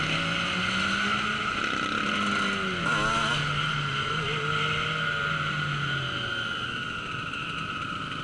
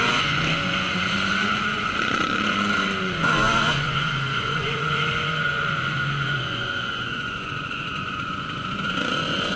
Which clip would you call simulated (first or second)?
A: second